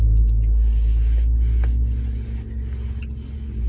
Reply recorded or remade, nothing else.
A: recorded